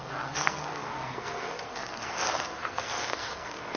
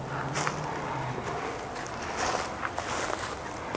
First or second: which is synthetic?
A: first